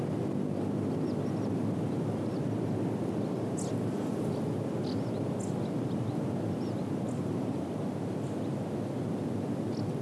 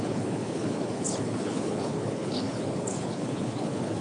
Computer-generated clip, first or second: second